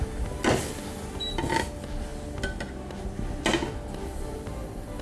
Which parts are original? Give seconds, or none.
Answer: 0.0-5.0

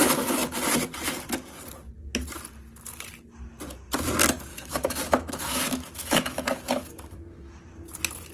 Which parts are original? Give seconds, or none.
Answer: 0.0-4.5; 7.6-8.3

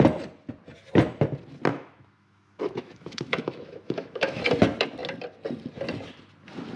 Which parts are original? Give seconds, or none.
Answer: 0.0-1.7; 4.4-6.8

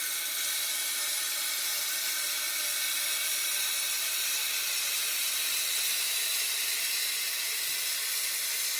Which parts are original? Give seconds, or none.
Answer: 0.0-8.8

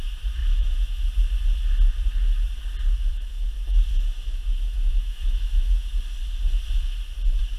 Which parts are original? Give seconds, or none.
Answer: 0.0-0.4; 1.1-3.1; 5.9-7.6